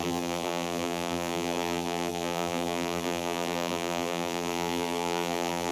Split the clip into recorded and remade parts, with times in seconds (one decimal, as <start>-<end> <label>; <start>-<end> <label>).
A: 0.0-5.7 remade